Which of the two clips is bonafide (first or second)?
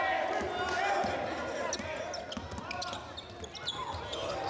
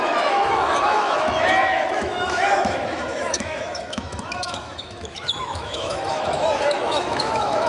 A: first